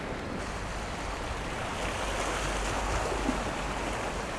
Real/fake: real